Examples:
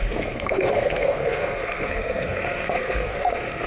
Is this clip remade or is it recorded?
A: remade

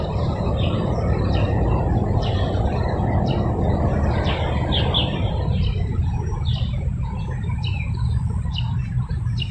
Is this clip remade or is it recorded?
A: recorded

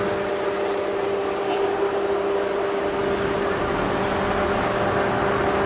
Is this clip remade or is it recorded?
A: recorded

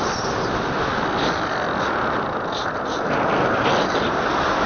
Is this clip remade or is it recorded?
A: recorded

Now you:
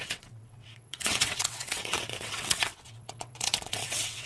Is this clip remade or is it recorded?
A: remade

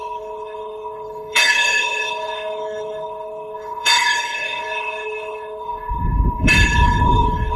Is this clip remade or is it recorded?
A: remade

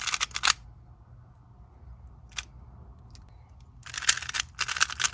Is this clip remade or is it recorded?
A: recorded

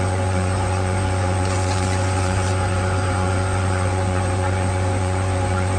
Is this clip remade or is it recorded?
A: remade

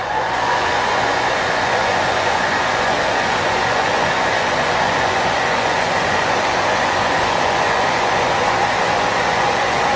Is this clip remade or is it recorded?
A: remade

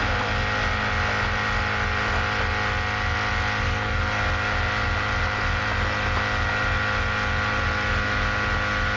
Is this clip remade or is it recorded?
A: recorded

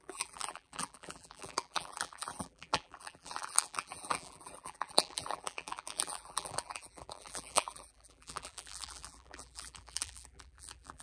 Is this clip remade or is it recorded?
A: remade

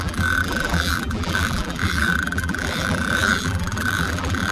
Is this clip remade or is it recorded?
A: remade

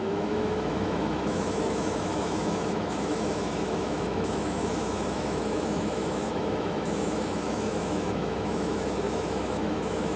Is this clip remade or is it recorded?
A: remade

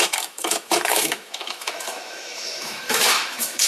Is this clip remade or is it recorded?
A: remade